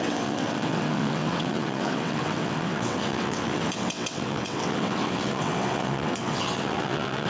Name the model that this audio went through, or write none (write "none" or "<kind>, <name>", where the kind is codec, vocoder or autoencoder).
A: vocoder, WaveNeXt